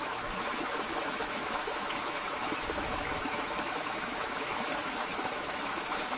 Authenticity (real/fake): fake